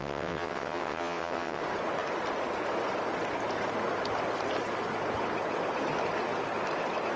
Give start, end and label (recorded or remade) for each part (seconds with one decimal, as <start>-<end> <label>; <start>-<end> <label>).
0.0-1.6 remade; 1.6-7.2 recorded